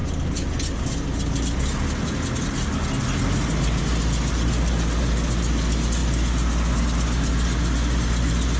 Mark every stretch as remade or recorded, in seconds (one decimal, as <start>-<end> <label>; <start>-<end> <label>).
0.0-8.6 recorded